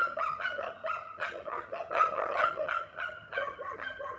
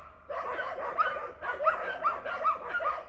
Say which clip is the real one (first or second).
second